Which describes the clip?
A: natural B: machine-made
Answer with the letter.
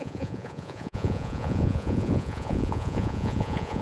B